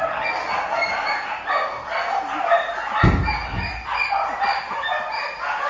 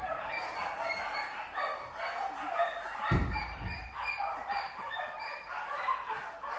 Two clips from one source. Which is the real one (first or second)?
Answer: first